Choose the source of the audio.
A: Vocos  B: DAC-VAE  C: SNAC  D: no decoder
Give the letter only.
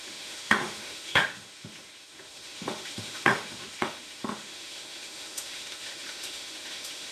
B